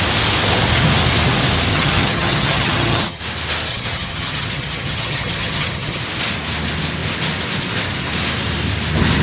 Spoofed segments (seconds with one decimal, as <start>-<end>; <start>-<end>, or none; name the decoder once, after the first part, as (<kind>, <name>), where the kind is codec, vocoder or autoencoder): 1.7-3.2 (vocoder, HiFi-GAN); 3.7-6.0